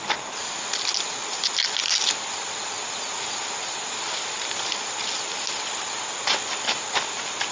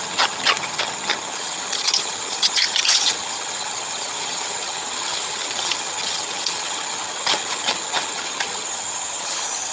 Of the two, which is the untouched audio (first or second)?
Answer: first